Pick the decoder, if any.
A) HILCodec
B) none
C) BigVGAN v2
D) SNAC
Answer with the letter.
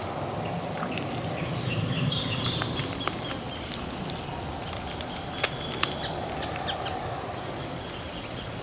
B